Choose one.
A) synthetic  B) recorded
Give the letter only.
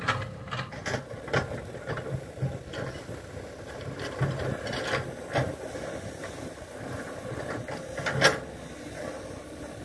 B